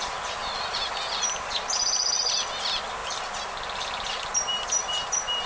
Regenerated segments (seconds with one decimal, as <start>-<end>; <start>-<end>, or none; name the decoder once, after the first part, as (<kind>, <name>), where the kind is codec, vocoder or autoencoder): none